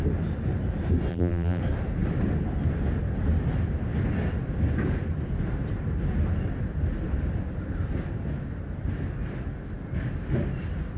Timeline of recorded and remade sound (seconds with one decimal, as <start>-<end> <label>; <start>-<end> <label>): 0.0-1.1 recorded; 1.1-1.6 remade; 1.6-11.0 recorded